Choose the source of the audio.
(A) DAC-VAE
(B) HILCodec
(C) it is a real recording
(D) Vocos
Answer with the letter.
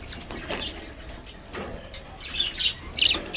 C